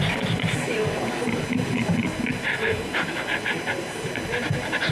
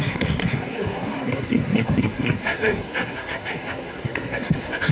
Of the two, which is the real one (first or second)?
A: first